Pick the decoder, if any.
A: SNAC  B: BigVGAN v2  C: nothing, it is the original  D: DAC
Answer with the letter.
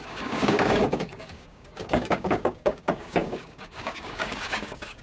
D